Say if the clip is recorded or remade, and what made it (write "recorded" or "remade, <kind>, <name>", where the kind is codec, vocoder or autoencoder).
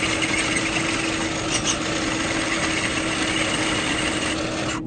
recorded